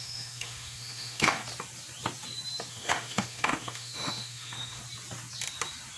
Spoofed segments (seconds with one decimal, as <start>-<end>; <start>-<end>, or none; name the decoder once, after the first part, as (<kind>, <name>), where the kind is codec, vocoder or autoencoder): 0.0-1.4 (autoencoder, DAC-VAE); 2.7-4.8